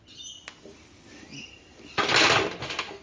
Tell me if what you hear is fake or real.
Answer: real